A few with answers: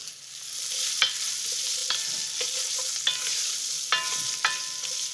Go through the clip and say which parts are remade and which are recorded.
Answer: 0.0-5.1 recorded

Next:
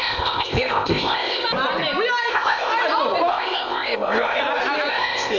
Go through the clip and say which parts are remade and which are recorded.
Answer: 0.0-1.4 remade; 1.4-2.3 recorded; 2.3-2.7 remade; 2.7-3.3 recorded; 3.3-4.4 remade; 4.4-4.9 recorded; 4.9-5.4 remade

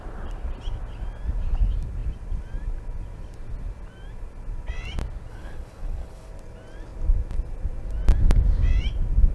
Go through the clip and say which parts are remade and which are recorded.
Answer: 0.0-5.3 recorded; 5.3-6.3 remade; 6.3-9.3 recorded

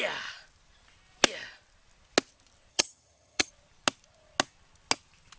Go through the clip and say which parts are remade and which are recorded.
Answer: 0.0-2.7 recorded; 2.7-3.5 remade; 3.5-5.4 recorded

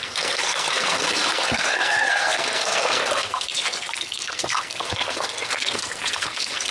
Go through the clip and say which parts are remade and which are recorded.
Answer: 0.0-6.7 remade

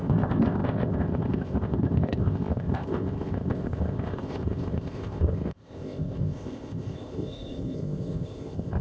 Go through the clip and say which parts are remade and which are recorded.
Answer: 0.0-8.8 remade

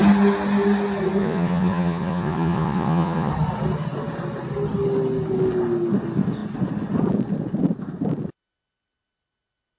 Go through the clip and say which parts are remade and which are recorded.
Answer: 0.0-1.2 recorded; 1.2-3.3 remade; 3.3-9.8 recorded

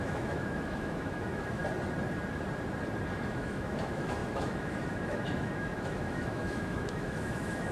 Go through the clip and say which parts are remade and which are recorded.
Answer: 0.0-1.6 remade; 1.6-3.2 recorded; 3.2-7.7 remade